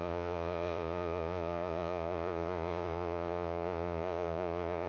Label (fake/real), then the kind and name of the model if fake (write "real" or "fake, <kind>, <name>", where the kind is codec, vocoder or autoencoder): fake, vocoder, Vocos